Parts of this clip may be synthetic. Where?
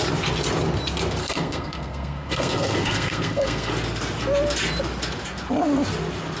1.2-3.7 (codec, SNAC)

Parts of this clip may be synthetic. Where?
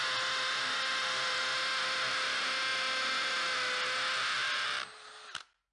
none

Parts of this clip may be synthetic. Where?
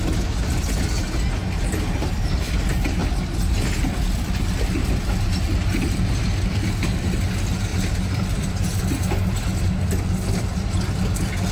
7.7-8.8 (vocoder, BigVGAN v2)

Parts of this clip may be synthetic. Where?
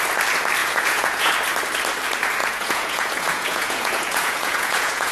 0.6-1.3 (vocoder, Vocos); 2.4-5.1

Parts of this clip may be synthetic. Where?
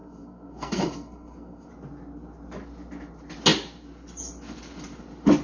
0.0-1.7 (codec, SNAC)